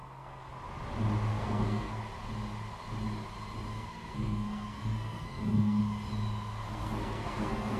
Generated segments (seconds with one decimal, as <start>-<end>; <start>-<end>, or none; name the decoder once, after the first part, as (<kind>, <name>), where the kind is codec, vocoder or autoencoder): 0.0-0.5 (codec, SNAC); 1.3-2.0; 3.7-5.8; 6.6-7.8